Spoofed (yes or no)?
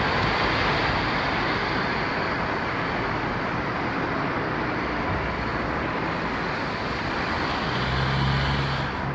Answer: no